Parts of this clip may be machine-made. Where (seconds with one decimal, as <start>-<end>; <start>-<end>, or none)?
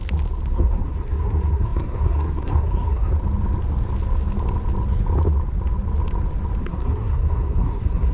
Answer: 0.5-3.1; 6.6-8.1